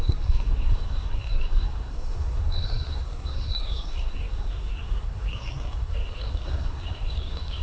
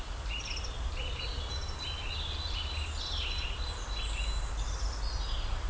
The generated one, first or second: first